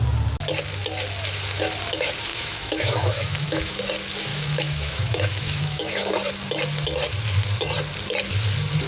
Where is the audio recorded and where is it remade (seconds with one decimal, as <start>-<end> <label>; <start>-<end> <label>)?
0.0-2.3 recorded; 2.3-3.8 remade; 3.8-4.3 recorded; 4.3-6.1 remade; 6.1-8.9 recorded